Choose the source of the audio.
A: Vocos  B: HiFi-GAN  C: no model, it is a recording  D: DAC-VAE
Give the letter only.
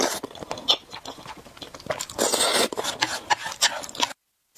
C